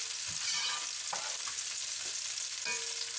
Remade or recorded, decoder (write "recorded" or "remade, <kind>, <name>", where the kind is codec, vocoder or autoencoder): recorded